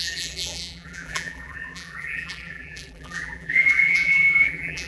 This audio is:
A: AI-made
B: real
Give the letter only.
A